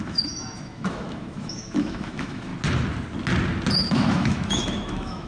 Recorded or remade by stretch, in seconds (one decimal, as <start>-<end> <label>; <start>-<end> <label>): 0.0-2.5 remade; 2.5-3.7 recorded; 3.7-5.3 remade